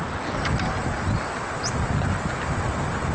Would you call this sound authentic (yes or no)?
yes